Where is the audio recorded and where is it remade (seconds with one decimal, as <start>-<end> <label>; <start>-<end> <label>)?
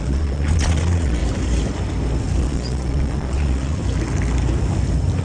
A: 0.0-1.2 remade; 1.2-2.4 recorded; 2.4-3.8 remade; 3.8-5.2 recorded